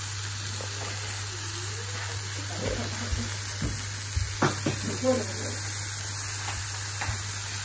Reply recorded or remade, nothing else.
recorded